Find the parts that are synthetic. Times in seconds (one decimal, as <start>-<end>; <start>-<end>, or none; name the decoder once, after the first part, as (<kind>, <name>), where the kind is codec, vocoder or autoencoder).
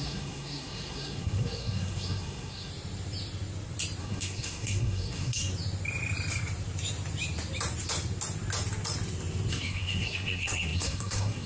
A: 0.0-2.7 (codec, SNAC); 4.0-5.5; 9.5-11.5